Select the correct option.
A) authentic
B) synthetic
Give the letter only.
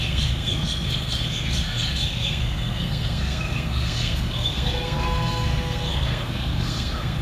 B